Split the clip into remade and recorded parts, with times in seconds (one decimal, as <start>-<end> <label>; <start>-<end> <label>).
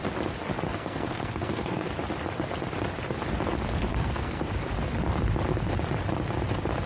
0.0-0.7 recorded; 0.7-1.9 remade; 1.9-3.9 recorded; 3.9-4.4 remade; 4.4-6.9 recorded